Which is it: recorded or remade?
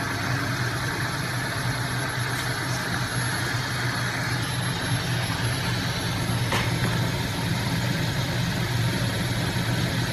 recorded